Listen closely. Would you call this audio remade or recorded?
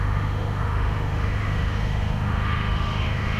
remade